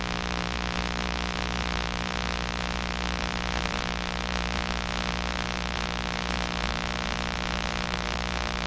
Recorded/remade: remade